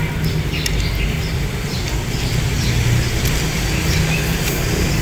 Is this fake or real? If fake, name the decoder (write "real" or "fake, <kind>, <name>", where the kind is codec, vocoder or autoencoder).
real